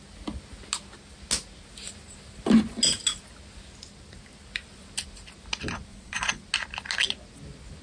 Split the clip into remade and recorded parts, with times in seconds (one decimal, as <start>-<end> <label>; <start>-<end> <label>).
0.0-5.9 recorded; 5.9-6.4 remade; 6.4-7.8 recorded